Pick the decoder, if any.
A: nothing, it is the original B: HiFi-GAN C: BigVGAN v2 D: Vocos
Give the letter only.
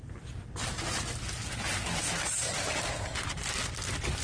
A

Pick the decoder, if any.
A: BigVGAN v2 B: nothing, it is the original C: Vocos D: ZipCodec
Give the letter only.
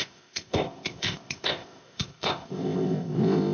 D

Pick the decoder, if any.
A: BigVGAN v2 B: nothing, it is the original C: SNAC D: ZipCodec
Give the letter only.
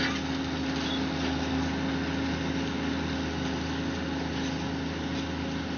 B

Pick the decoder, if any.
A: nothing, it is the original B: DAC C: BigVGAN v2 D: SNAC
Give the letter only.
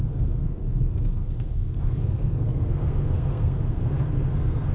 D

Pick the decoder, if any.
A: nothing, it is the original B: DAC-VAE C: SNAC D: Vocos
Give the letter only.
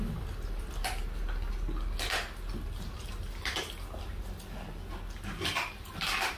A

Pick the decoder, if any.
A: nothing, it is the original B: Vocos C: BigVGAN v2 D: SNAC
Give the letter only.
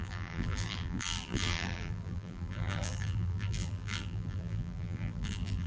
C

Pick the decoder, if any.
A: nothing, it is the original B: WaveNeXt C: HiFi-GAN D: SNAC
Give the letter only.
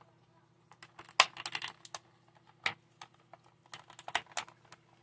A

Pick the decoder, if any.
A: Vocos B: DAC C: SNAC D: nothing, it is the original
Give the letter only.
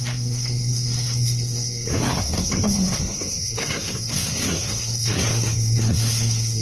C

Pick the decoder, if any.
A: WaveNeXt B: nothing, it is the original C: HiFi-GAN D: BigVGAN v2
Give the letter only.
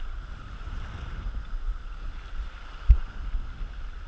B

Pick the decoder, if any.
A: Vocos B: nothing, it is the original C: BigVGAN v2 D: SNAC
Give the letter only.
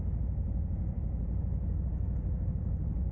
B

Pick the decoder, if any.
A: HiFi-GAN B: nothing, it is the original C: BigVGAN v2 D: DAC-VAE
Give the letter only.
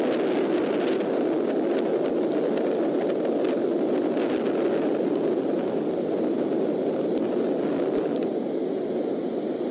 B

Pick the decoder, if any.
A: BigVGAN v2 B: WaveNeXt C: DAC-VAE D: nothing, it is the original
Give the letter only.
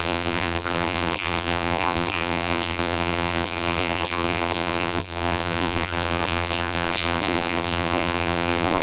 A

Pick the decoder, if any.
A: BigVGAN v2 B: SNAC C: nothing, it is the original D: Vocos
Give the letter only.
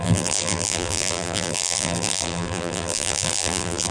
A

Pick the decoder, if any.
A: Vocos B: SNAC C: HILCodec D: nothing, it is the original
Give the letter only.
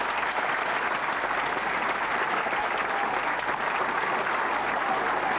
D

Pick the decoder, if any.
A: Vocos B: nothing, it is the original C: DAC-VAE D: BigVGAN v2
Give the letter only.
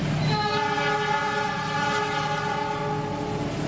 B